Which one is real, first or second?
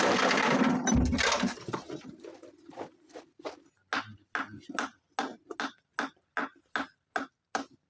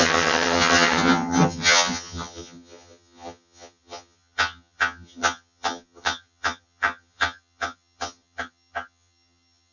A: first